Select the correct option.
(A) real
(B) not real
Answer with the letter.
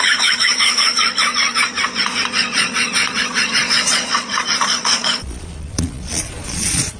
B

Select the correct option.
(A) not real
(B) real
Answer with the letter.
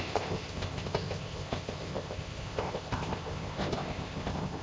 A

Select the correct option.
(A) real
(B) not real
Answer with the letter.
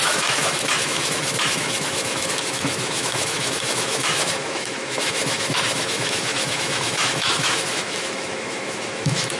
B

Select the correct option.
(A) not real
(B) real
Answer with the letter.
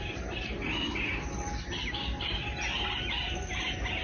B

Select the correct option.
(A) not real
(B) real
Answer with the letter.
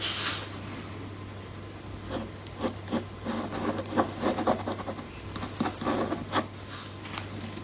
B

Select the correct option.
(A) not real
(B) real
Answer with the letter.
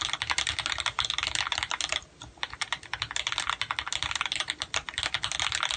B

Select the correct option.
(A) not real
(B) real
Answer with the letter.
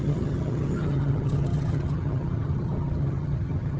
A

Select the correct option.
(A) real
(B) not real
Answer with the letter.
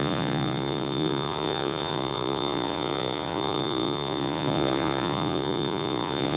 B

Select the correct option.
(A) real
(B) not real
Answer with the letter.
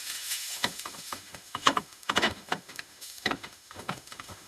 B